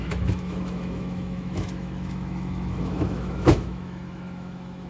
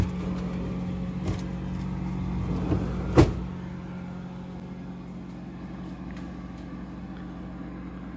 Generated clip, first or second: first